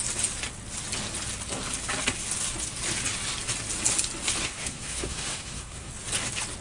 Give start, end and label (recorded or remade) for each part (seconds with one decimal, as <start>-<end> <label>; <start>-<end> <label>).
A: 0.0-4.4 recorded; 4.4-5.9 remade; 5.9-6.6 recorded